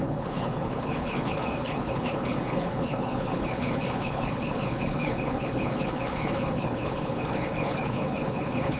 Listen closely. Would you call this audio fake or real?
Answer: fake